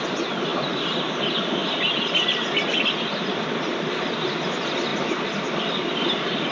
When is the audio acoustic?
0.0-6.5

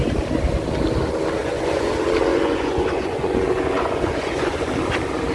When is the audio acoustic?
0.0-1.4; 1.9-2.3; 4.7-5.3

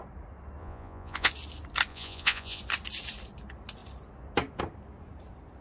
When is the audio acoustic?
0.0-0.6; 1.3-1.9; 2.6-5.6

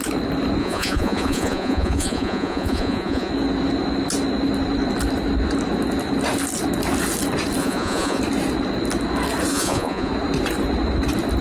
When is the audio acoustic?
0.0-0.6; 3.3-7.6; 8.2-9.5; 10.1-11.4

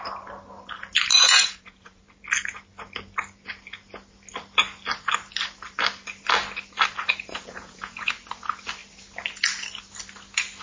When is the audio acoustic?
0.0-1.1; 2.0-7.3; 8.1-10.6